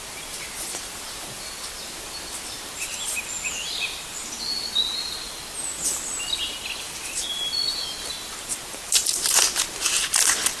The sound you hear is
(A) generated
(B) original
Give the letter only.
B